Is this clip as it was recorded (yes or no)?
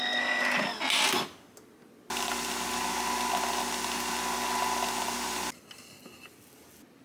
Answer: yes